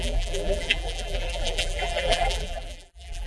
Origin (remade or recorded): remade